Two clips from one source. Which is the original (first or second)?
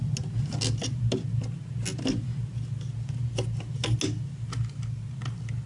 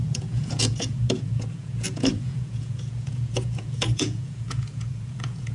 first